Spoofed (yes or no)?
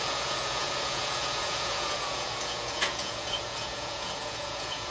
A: yes